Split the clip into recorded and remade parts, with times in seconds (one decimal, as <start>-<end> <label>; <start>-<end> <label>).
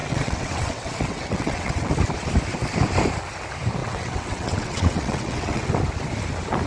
0.0-1.9 remade; 1.9-3.8 recorded; 3.8-5.7 remade; 5.7-6.7 recorded